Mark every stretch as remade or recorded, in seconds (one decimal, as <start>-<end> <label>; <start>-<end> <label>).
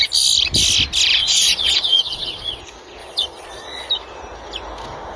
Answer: 0.0-1.2 recorded; 1.2-2.6 remade; 2.6-3.0 recorded; 3.0-3.9 remade; 3.9-5.2 recorded